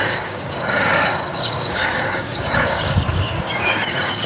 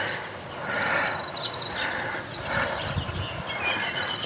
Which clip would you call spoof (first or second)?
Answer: first